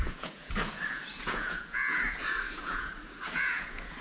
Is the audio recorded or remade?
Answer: remade